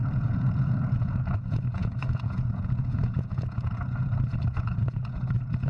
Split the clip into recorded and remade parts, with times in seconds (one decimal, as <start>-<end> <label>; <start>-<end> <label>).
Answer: 0.0-5.7 remade